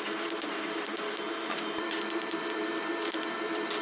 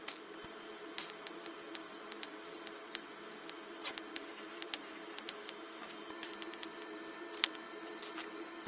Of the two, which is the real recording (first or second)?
first